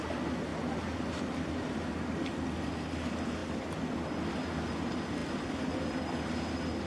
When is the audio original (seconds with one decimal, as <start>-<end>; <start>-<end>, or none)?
0.0-6.9